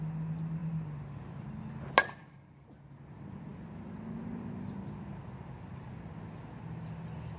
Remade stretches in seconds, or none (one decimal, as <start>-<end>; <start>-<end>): none

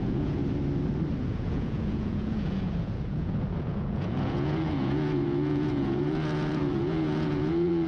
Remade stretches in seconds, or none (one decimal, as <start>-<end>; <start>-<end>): 0.0-0.4; 1.2-7.9

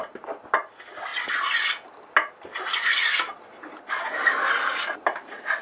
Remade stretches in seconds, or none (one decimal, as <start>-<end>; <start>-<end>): none